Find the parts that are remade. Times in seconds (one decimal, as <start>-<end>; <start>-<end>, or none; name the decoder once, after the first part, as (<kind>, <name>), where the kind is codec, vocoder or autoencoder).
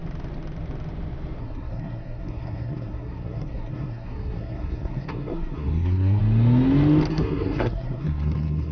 1.4-6.2 (codec, SNAC); 7.1-8.7